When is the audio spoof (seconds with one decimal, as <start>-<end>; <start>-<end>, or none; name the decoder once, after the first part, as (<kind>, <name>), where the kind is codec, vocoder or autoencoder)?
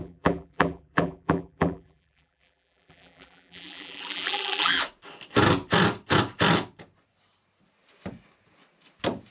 0.0-4.8 (vocoder, BigVGAN v2)